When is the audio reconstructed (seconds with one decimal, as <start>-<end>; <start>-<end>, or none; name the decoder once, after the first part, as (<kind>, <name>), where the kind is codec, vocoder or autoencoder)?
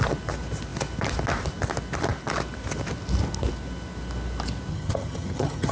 4.7-5.7 (vocoder, HiFi-GAN)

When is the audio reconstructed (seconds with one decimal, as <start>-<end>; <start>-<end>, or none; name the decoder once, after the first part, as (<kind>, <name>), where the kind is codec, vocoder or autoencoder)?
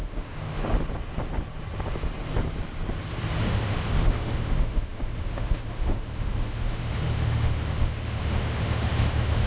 0.0-0.6 (autoencoder, DAC-VAE); 3.4-9.5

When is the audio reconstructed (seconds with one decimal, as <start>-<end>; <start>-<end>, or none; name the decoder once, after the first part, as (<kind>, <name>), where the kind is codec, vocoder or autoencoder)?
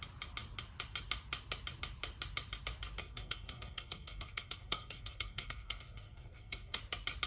3.0-6.8 (codec, SNAC)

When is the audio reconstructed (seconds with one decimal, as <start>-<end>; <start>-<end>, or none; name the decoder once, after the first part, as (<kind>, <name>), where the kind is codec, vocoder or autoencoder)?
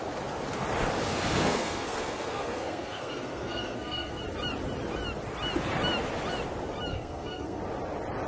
1.1-4.2 (codec, SNAC); 6.9-7.6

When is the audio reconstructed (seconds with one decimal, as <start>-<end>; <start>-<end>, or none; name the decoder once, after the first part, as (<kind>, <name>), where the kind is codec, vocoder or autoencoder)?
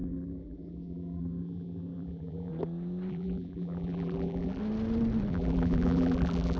0.0-2.5 (vocoder, BigVGAN v2); 3.1-4.6; 5.3-6.6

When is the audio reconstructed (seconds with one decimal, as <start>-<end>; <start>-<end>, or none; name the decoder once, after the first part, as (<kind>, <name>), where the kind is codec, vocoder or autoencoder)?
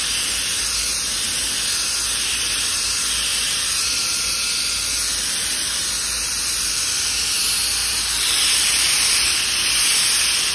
3.3-3.9 (vocoder, BigVGAN v2); 6.4-7.1; 7.8-9.4